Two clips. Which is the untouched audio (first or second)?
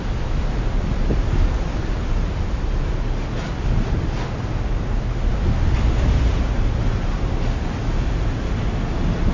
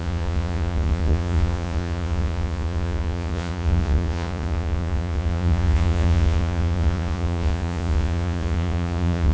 first